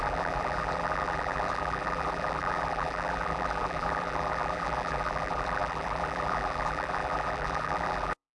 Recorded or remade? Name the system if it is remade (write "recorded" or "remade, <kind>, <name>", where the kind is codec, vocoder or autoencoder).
remade, vocoder, BigVGAN v2